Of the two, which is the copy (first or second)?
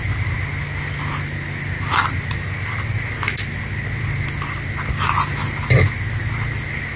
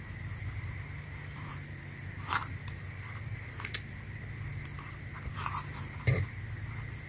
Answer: second